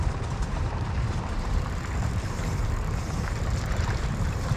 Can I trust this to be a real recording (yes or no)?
no